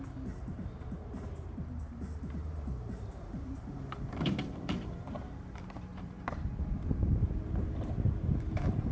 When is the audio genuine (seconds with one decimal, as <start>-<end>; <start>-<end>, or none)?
5.9-7.2